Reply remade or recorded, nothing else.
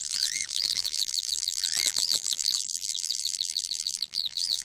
remade